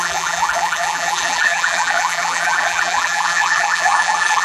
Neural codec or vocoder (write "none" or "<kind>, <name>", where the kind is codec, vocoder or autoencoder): vocoder, BigVGAN v2